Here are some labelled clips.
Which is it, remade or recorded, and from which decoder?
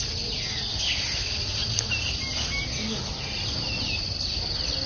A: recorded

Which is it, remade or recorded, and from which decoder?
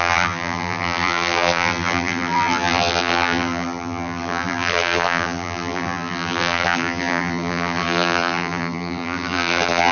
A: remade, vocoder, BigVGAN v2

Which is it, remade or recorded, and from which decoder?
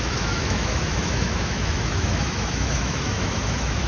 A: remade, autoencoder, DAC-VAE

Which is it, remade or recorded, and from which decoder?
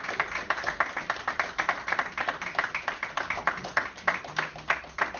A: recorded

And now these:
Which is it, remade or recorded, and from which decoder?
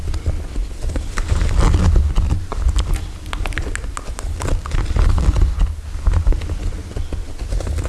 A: recorded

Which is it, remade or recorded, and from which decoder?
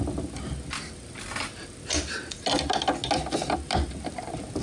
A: recorded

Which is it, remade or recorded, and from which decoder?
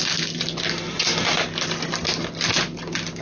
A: recorded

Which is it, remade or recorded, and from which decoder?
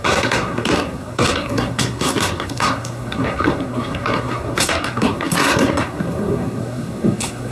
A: remade, codec, SNAC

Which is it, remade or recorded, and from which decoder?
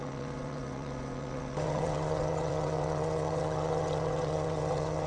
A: remade, vocoder, WaveNeXt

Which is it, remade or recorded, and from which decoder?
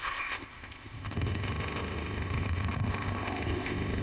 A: remade, codec, ZipCodec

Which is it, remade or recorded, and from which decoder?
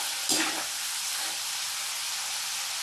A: recorded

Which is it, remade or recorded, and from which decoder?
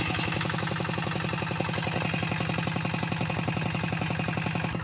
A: recorded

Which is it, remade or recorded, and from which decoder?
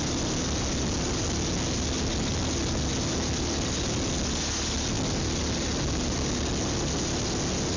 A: recorded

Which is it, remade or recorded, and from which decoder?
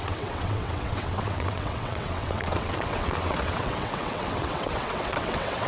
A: remade, vocoder, WaveNeXt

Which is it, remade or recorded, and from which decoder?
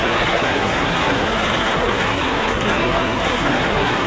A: remade, codec, SNAC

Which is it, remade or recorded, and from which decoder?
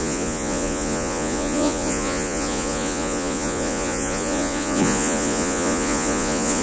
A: remade, vocoder, Vocos